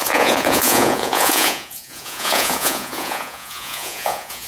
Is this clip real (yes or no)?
no